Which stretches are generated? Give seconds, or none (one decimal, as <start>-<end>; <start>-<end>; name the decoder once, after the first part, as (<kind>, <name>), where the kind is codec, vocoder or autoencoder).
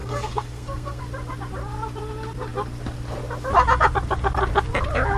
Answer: 0.0-1.0 (codec, SNAC)